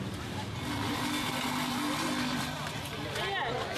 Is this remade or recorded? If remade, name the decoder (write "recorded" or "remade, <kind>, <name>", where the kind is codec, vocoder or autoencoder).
recorded